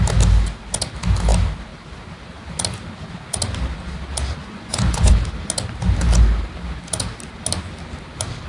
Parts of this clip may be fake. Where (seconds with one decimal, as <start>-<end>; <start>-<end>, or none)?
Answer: 4.4-5.1